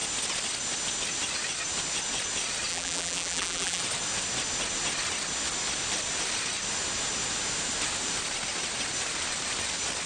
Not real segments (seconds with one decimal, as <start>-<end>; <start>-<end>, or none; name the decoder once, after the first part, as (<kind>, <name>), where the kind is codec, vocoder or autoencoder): 2.7-3.8 (vocoder, BigVGAN v2)